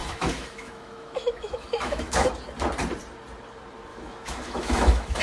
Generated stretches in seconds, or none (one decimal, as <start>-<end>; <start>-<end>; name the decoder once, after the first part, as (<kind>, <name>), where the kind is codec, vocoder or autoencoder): 0.0-2.3 (autoencoder, DAC-VAE); 3.9-5.2